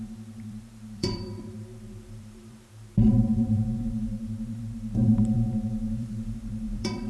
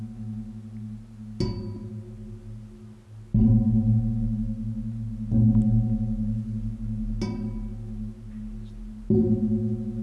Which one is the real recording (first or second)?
second